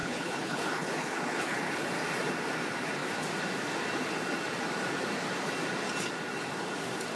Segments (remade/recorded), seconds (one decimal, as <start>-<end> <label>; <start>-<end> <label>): 0.0-1.9 remade; 1.9-7.2 recorded